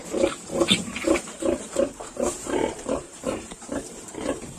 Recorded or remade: remade